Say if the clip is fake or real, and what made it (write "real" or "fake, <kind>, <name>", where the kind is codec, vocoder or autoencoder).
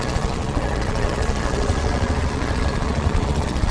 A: fake, vocoder, Vocos